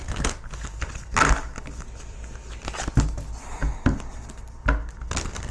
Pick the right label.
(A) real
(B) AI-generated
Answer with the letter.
A